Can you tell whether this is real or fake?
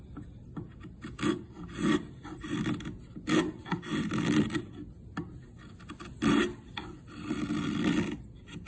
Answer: real